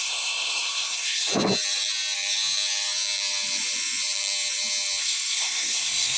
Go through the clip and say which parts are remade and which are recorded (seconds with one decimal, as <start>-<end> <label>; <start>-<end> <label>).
0.0-1.3 remade; 1.3-5.0 recorded; 5.0-6.2 remade